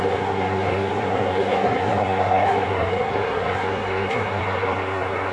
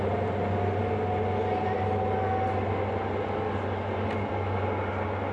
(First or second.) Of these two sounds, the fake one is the first